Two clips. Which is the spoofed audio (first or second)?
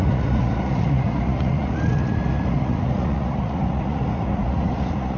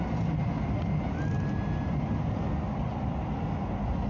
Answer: first